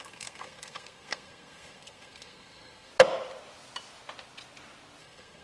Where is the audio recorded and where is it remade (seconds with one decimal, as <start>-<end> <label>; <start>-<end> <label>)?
0.0-2.9 remade; 2.9-5.0 recorded; 5.0-5.4 remade